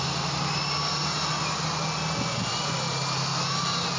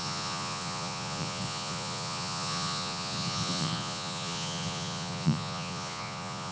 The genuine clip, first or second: first